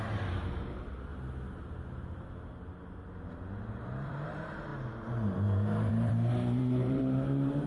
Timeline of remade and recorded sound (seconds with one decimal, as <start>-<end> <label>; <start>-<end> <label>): 0.0-1.1 remade; 1.1-3.6 recorded; 3.6-7.7 remade